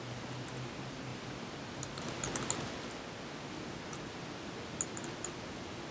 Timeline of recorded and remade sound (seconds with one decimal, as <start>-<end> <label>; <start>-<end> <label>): 0.0-5.9 recorded